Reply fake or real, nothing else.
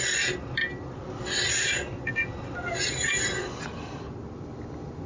real